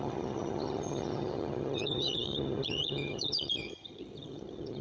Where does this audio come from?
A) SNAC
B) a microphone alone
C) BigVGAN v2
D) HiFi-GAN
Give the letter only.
D